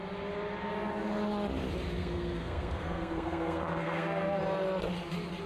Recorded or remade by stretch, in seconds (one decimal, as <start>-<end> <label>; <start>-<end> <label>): 0.0-2.0 recorded; 2.0-4.4 remade; 4.4-5.5 recorded